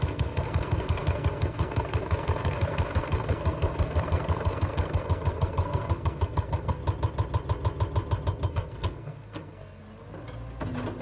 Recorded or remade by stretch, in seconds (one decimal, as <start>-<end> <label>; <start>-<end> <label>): 0.0-6.8 remade; 6.8-8.5 recorded; 8.5-9.8 remade; 9.8-11.0 recorded